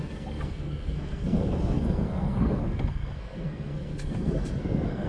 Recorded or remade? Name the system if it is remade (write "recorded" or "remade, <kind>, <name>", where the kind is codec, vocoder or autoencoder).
remade, codec, SNAC